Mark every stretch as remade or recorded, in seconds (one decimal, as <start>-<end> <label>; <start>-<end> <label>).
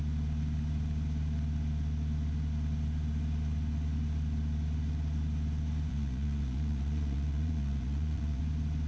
0.0-5.9 recorded; 5.9-8.4 remade; 8.4-8.9 recorded